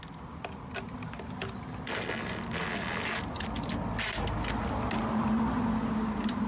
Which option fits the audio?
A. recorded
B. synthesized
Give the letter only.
A